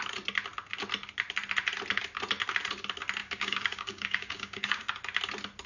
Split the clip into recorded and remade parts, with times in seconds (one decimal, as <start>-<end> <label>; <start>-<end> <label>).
0.0-3.2 recorded; 3.2-4.9 remade; 4.9-5.7 recorded